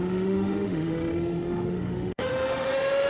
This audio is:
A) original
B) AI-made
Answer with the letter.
B